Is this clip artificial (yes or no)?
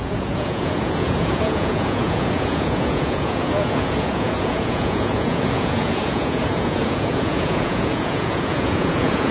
yes